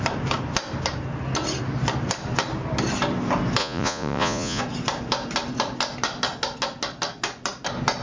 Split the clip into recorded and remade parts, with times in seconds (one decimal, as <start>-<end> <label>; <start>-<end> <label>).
0.0-3.6 recorded; 3.6-4.6 remade; 4.6-8.0 recorded